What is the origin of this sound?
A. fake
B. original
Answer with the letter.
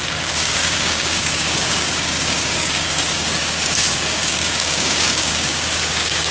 A